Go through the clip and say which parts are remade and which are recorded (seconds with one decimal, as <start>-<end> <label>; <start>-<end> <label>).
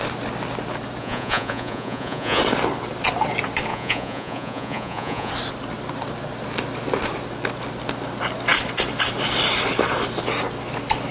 0.0-1.0 recorded; 1.0-2.4 remade; 2.4-3.7 recorded; 3.7-5.3 remade; 5.3-11.1 recorded